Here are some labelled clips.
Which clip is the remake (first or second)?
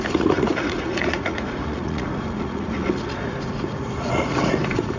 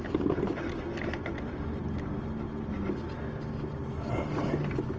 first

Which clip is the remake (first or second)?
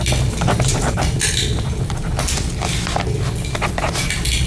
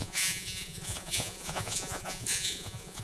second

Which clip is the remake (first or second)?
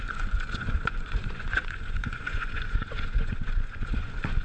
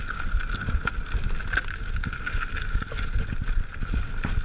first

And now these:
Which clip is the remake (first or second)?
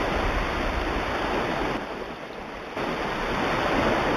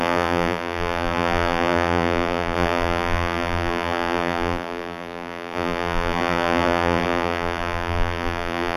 second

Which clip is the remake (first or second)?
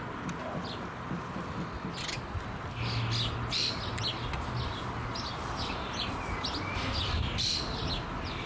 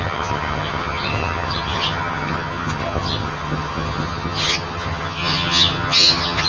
second